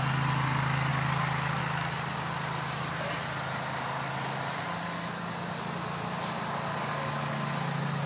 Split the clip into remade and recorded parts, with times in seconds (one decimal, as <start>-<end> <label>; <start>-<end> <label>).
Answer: 0.0-8.1 recorded